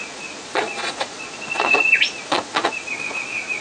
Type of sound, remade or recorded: remade